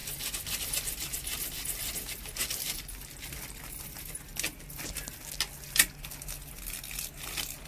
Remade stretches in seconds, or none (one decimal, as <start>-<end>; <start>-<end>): none